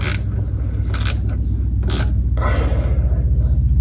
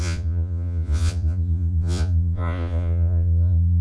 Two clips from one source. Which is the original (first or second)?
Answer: first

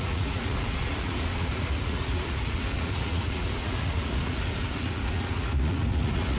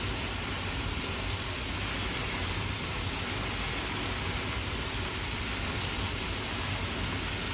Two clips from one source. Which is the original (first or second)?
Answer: second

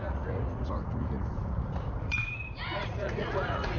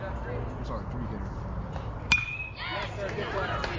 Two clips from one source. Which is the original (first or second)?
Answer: second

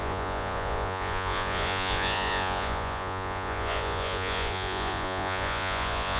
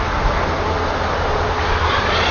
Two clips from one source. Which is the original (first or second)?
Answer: second